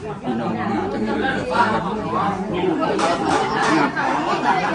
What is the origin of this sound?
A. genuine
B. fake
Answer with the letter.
B